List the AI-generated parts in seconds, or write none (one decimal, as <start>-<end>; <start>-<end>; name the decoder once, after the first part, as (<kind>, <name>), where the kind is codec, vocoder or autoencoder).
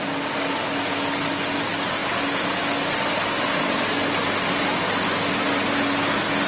none